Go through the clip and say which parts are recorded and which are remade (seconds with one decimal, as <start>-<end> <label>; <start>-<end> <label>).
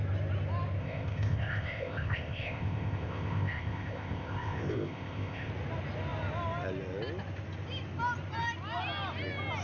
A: 0.0-0.8 recorded; 0.8-5.5 remade; 5.5-9.6 recorded